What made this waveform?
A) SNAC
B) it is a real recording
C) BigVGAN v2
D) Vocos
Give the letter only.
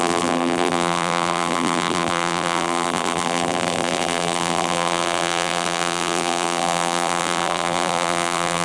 C